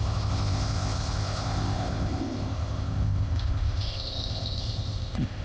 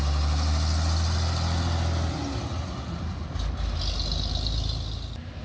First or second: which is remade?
first